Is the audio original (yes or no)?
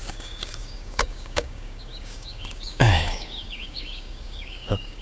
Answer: no